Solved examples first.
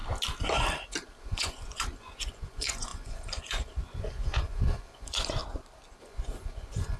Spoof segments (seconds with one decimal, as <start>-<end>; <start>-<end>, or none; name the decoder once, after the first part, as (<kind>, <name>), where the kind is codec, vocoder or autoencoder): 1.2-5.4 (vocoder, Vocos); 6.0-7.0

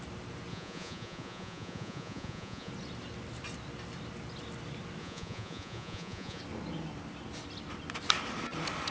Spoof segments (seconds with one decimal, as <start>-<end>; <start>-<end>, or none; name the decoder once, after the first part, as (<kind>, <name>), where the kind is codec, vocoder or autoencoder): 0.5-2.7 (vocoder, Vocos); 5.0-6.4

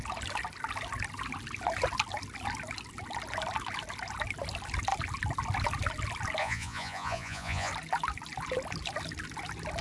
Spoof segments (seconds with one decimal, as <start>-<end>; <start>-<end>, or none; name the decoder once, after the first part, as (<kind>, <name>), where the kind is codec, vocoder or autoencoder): 6.4-7.7 (vocoder, Vocos)

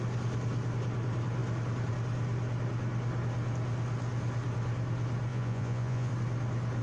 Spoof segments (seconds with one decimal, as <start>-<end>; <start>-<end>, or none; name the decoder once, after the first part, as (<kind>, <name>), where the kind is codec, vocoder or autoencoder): 5.3-6.1 (vocoder, Vocos)

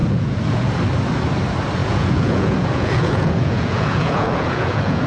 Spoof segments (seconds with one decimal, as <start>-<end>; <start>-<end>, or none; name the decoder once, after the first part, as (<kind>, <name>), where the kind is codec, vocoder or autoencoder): 0.0-0.7 (vocoder, Vocos); 1.8-5.1

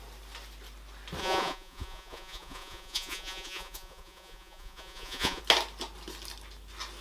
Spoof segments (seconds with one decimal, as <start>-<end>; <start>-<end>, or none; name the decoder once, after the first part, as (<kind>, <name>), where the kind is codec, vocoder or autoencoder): 1.2-5.4 (vocoder, Vocos)

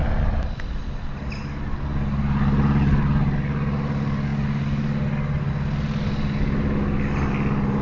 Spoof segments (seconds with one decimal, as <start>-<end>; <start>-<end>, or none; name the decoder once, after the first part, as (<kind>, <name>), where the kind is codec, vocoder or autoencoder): none

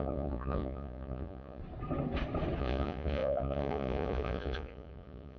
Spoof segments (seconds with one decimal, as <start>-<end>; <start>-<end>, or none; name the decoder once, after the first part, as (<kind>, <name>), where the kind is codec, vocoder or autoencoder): 0.0-1.6 (vocoder, Vocos); 2.6-5.4